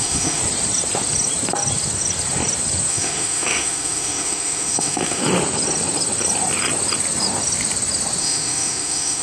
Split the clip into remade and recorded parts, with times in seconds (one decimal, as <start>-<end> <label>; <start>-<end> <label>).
0.0-0.4 remade; 0.4-2.9 recorded; 2.9-5.2 remade; 5.2-8.2 recorded; 8.2-9.2 remade